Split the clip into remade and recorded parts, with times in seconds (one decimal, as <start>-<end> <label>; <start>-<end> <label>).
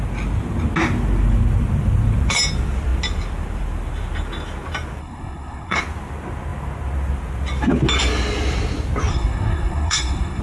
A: 0.0-5.0 recorded; 5.0-5.8 remade; 5.8-9.1 recorded; 9.1-10.4 remade